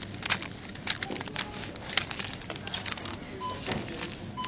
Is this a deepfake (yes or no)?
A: no